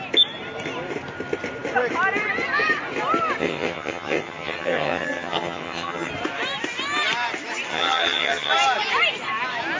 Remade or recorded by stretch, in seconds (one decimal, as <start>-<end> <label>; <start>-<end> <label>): 0.0-3.4 recorded; 3.4-6.1 remade; 6.1-7.7 recorded; 7.7-8.5 remade; 8.5-9.8 recorded

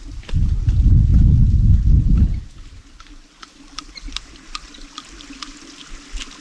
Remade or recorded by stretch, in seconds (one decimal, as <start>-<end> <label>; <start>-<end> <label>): 0.0-6.4 recorded

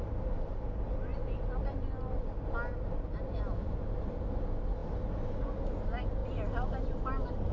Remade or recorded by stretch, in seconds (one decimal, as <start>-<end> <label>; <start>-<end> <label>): 0.0-7.5 recorded

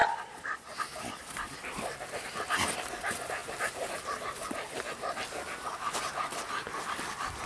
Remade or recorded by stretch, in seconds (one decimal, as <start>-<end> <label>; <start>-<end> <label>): 0.0-0.8 remade; 0.8-7.5 recorded

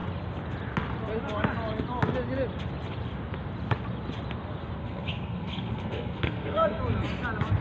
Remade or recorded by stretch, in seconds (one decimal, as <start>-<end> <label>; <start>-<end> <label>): 0.0-4.8 recorded; 4.8-6.8 remade; 6.8-7.6 recorded

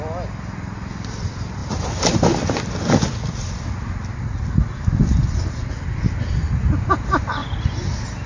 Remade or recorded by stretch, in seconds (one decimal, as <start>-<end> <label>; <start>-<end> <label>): 0.0-8.3 recorded

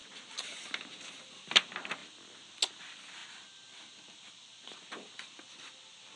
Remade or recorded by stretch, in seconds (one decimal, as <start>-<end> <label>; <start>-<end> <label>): 0.0-6.2 recorded

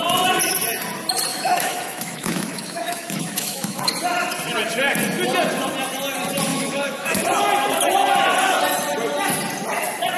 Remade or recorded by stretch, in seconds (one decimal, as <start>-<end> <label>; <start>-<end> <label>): 0.0-1.3 recorded; 1.3-3.8 remade; 3.8-6.5 recorded; 6.5-7.2 remade; 7.2-10.2 recorded